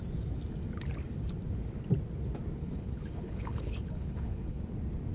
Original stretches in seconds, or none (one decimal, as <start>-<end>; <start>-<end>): 0.0-2.6; 4.6-5.1